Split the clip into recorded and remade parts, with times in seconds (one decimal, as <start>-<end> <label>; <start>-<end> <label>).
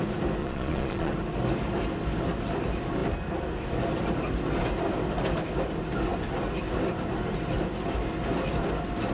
0.0-0.4 recorded; 0.4-1.1 remade; 1.1-9.1 recorded